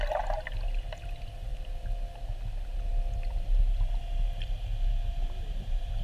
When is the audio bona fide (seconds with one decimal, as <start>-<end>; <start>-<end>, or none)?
0.0-6.0